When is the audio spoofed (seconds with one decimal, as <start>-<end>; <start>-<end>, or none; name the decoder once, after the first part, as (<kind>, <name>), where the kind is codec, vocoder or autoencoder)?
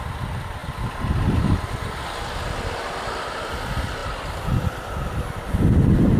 none